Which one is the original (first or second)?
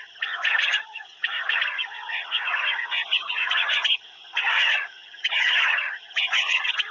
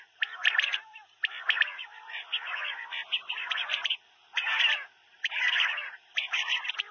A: second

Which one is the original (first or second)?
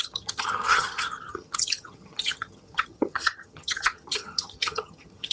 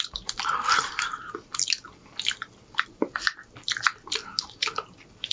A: second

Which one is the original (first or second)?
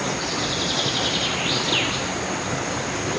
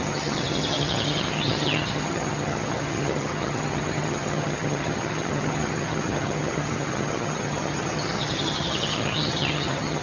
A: first